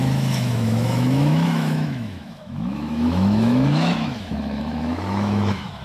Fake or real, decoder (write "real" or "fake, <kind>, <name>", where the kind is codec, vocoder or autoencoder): fake, autoencoder, DAC-VAE